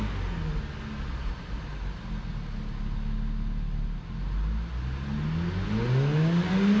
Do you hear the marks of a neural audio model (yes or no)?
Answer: no